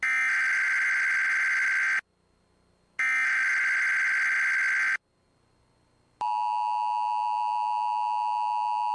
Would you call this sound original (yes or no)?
yes